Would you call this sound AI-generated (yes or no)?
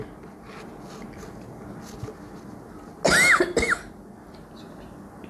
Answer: no